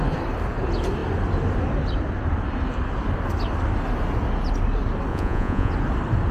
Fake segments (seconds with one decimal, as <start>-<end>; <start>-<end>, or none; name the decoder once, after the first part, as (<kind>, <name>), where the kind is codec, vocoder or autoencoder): 5.1-5.7 (vocoder, Vocos)